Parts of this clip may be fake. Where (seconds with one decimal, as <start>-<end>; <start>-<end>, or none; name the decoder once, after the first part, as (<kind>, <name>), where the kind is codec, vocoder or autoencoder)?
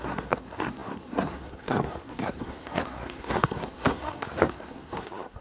0.0-5.4 (codec, SNAC)